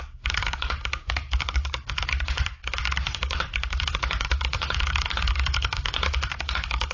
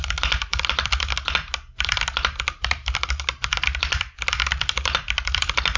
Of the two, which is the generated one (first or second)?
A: first